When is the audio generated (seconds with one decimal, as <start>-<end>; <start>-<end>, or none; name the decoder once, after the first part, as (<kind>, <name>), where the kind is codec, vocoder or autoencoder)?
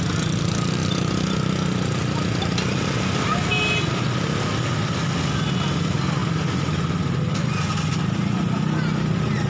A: none